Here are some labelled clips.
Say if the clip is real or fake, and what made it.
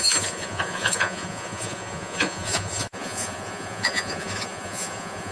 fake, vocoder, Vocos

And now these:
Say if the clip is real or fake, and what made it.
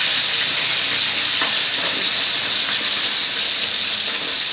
real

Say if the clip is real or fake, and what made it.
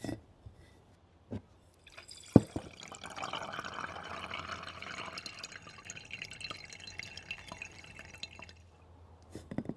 real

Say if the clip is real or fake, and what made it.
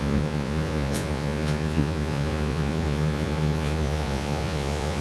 fake, vocoder, Vocos